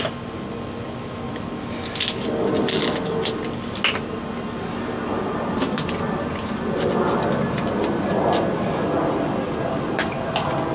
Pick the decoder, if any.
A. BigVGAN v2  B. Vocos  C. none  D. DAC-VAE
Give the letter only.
C